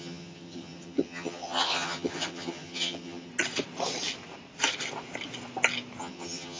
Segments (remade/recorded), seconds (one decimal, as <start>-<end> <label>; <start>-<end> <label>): 0.0-3.3 remade; 3.3-6.0 recorded; 6.0-6.6 remade